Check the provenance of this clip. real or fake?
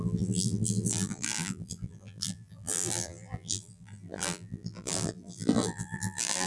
fake